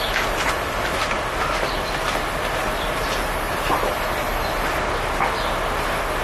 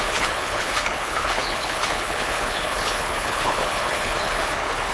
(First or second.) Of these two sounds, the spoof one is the second